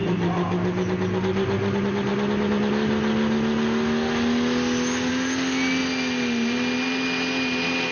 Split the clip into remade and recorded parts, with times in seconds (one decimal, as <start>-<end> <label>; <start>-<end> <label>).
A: 0.0-7.9 recorded